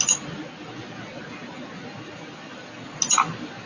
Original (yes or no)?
yes